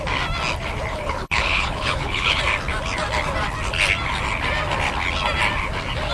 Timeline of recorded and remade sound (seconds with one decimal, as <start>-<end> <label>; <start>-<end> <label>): 0.0-0.9 recorded; 0.9-2.4 remade; 2.4-6.1 recorded